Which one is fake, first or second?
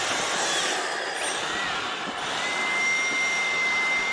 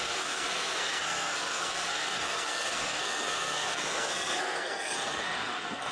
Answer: second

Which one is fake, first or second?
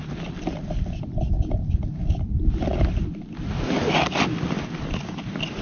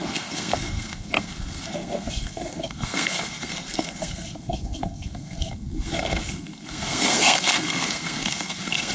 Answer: second